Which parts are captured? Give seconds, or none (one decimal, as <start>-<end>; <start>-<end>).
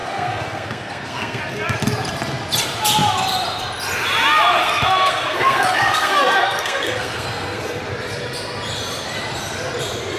1.4-4.6; 7.8-10.2